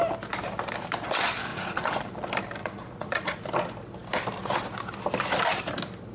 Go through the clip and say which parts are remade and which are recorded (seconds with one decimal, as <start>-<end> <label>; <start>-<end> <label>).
0.0-1.5 recorded; 1.5-2.0 remade; 2.0-2.6 recorded; 2.6-3.4 remade; 3.4-6.1 recorded